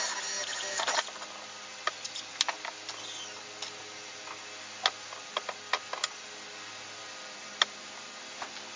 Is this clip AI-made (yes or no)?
no